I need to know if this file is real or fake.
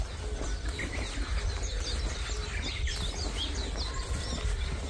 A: real